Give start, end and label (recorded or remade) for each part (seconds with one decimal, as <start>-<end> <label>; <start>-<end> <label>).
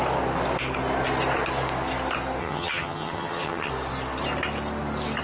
0.0-2.4 recorded; 2.4-3.7 remade; 3.7-5.2 recorded